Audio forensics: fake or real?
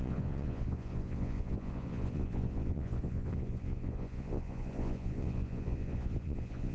fake